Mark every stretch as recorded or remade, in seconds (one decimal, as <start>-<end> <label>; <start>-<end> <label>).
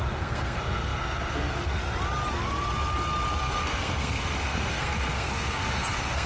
0.0-1.8 remade; 1.8-3.4 recorded; 3.4-6.3 remade